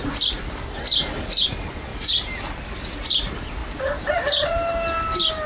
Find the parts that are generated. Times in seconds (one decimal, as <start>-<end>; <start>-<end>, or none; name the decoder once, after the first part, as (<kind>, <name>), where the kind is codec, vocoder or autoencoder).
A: 1.9-2.4 (vocoder, BigVGAN v2)